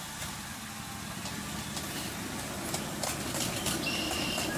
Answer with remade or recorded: recorded